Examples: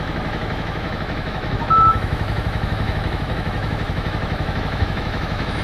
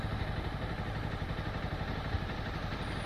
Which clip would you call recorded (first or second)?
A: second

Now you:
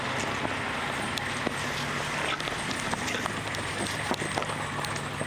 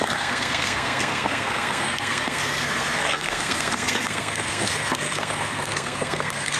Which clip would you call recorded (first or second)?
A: first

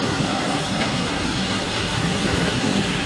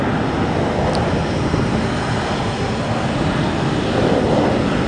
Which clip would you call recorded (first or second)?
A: second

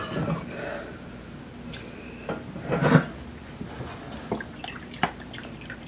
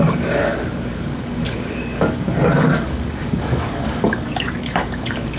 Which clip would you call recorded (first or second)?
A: first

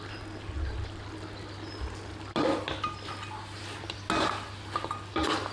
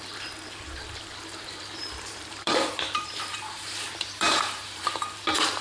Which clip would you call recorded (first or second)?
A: first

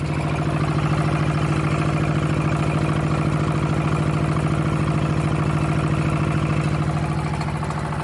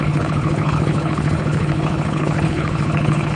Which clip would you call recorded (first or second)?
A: first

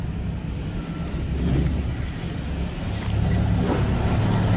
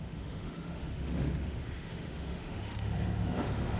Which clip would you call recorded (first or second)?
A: first